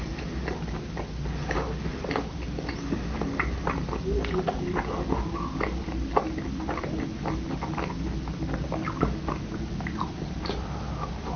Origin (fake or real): real